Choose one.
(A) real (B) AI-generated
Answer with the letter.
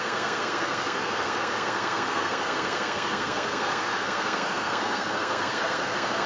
B